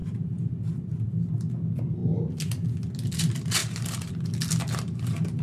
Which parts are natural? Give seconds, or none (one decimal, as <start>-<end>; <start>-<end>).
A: 1.1-3.6; 4.1-4.7